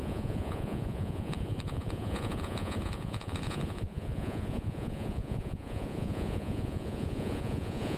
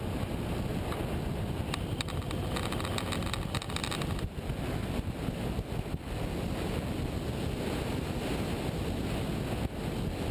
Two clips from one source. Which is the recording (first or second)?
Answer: second